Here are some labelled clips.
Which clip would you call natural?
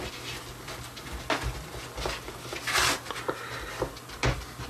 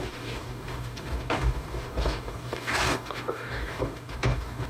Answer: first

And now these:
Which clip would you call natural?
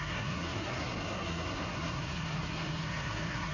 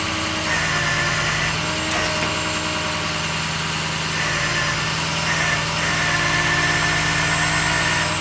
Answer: second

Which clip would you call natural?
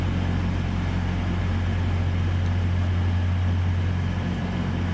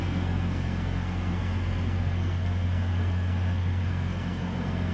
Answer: first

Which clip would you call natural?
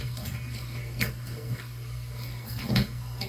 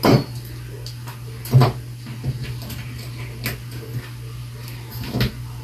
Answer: second